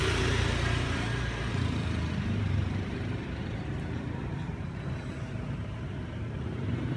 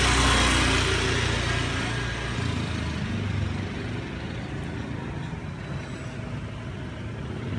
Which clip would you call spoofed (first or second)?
first